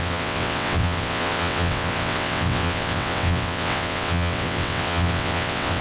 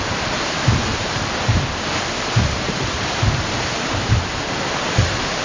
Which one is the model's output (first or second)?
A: first